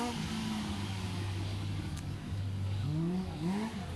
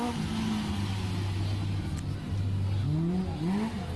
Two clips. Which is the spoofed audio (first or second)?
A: first